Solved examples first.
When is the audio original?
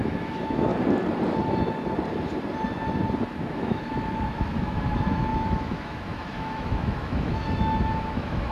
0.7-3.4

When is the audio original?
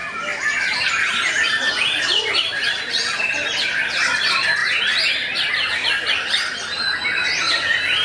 0.0-8.0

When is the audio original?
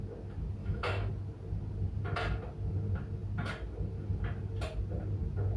0.0-0.6; 1.1-5.6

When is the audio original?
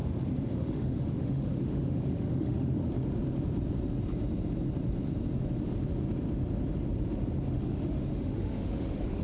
0.0-0.5; 2.8-7.5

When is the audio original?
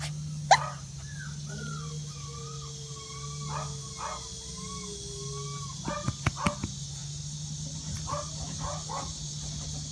0.0-9.9